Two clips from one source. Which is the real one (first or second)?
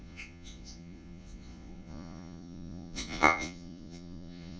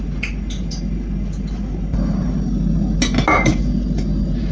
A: second